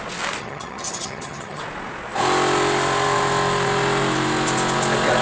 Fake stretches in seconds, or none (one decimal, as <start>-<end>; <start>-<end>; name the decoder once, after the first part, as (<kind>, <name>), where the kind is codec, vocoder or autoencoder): 0.4-1.6 (vocoder, HiFi-GAN)